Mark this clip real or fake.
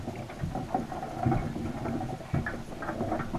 real